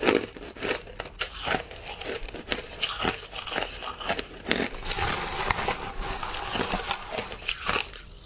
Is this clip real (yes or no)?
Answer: yes